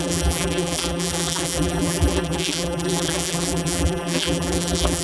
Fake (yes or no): yes